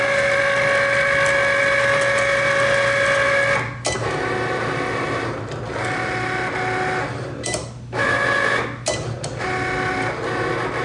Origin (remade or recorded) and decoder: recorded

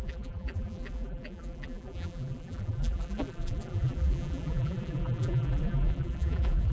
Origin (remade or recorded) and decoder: remade, vocoder, BigVGAN v2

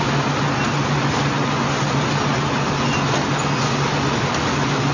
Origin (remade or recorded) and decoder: recorded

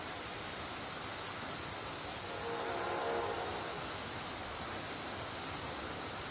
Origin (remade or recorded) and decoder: recorded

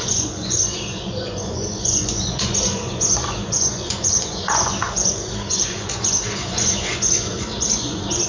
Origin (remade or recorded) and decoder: remade, vocoder, Vocos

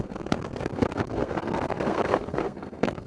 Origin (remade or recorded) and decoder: remade, codec, SNAC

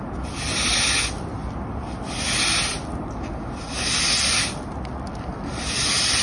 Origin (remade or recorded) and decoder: recorded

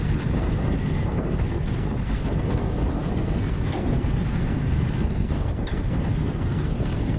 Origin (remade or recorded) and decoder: remade, codec, SNAC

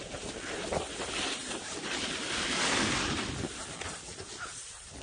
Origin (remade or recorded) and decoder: recorded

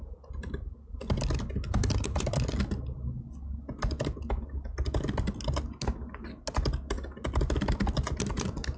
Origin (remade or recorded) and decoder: recorded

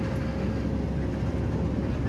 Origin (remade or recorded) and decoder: recorded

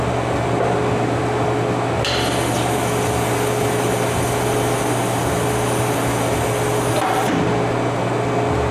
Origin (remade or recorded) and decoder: recorded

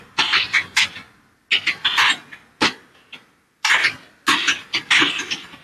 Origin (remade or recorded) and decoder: recorded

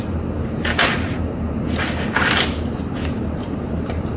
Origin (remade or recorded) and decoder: remade, vocoder, BigVGAN v2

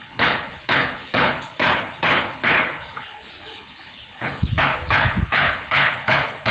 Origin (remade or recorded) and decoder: remade, codec, HILCodec